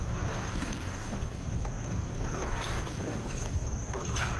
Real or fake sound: fake